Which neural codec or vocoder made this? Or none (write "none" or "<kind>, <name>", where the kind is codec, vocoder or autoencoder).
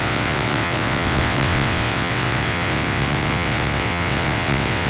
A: vocoder, WaveNeXt